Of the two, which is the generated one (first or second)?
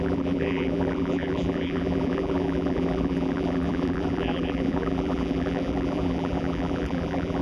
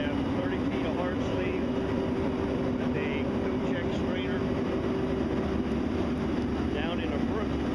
first